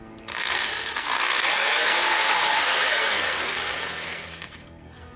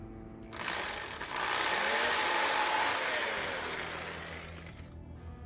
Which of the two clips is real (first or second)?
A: second